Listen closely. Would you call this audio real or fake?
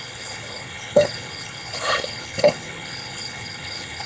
fake